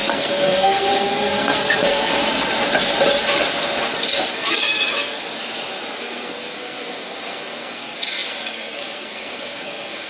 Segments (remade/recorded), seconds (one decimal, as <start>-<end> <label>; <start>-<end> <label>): 0.0-2.2 remade; 2.2-4.3 recorded; 4.3-5.2 remade; 5.2-6.0 recorded; 6.0-10.1 remade